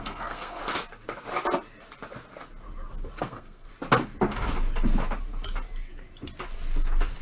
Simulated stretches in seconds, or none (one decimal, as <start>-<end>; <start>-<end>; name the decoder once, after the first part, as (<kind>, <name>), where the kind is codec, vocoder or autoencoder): 0.0-0.6 (codec, SNAC); 3.2-3.7